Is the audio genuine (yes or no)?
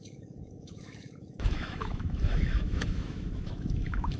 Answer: no